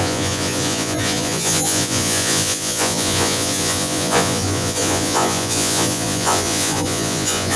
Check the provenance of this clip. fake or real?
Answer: fake